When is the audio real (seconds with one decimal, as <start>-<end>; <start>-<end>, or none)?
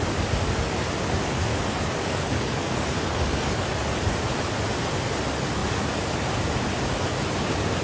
0.0-1.5; 3.7-7.8